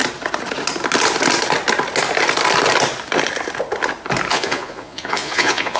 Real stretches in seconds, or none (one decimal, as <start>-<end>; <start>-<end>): 0.0-4.3